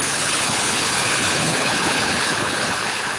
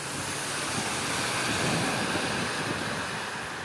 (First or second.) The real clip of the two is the second